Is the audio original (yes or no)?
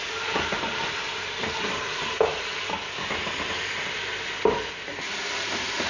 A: yes